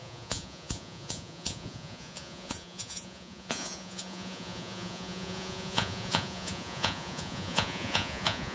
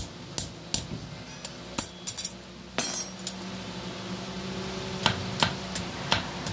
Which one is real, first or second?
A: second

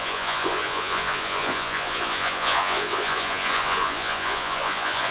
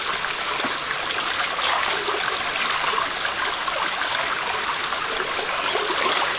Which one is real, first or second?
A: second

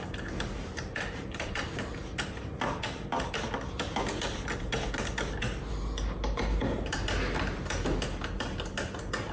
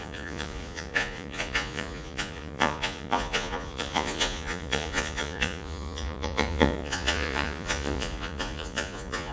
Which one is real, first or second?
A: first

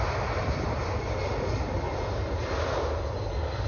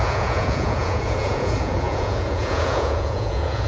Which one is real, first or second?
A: first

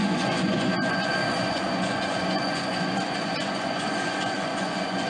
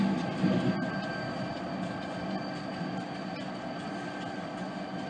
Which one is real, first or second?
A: second